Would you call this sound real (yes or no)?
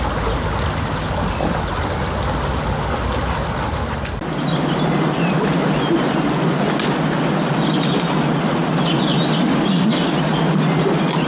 yes